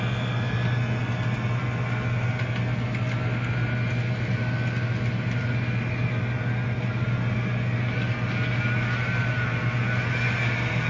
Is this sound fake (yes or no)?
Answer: no